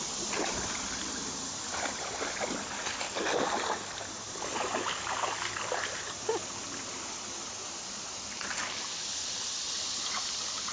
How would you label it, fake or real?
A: real